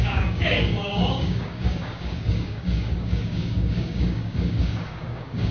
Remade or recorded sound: remade